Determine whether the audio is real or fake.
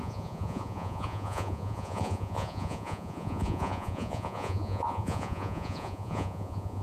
fake